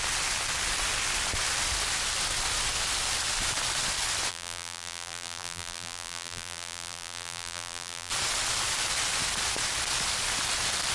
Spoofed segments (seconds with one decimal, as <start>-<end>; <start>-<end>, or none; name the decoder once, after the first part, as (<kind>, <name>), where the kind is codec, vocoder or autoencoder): 4.3-8.1 (vocoder, BigVGAN v2)